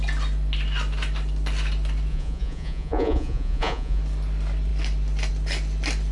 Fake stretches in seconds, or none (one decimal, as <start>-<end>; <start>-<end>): 2.1-4.0